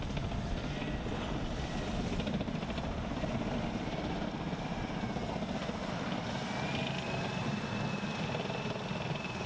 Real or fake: real